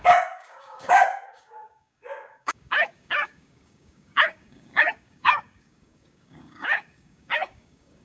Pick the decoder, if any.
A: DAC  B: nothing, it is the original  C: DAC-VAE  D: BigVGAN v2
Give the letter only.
A